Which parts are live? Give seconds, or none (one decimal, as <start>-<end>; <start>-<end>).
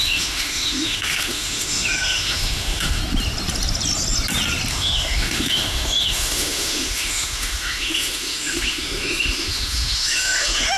3.0-4.7